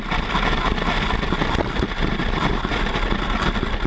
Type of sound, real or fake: real